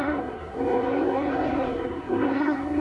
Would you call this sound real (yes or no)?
no